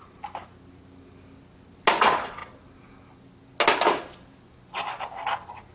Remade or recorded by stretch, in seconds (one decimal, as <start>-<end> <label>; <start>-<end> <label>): 0.0-5.7 recorded

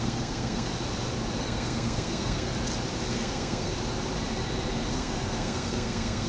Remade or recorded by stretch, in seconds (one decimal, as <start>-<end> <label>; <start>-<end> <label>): 0.0-0.7 remade; 0.7-1.4 recorded; 1.4-2.5 remade; 2.5-3.1 recorded; 3.1-3.7 remade; 3.7-4.9 recorded; 4.9-6.3 remade

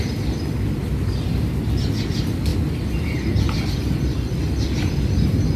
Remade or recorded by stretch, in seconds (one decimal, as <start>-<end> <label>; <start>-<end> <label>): 0.0-5.6 recorded

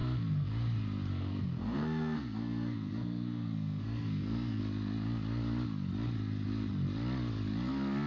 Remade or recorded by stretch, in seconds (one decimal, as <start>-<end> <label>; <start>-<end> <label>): 0.0-0.5 remade; 0.5-1.1 recorded; 1.1-4.6 remade; 4.6-8.1 recorded

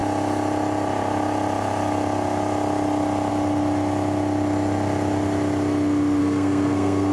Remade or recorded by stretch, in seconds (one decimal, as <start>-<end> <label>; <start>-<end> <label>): 0.0-6.2 recorded; 6.2-7.1 remade

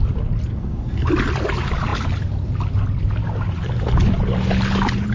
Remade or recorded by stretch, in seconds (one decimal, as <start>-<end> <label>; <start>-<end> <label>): 0.0-0.5 recorded; 0.5-1.1 remade; 1.1-5.1 recorded

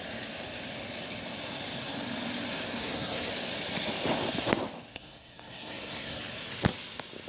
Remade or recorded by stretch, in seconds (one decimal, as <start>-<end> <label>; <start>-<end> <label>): 0.0-2.8 recorded; 2.8-3.3 remade; 3.3-4.9 recorded; 4.9-6.2 remade; 6.2-7.3 recorded